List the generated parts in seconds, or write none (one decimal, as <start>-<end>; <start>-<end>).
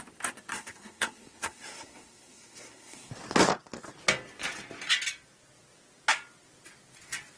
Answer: 0.5-3.1